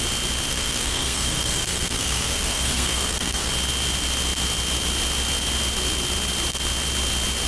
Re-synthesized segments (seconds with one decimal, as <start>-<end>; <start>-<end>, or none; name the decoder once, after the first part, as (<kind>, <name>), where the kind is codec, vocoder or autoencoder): 0.5-3.5 (codec, SNAC)